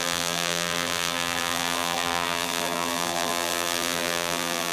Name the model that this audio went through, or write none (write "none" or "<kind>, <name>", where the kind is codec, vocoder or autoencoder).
vocoder, BigVGAN v2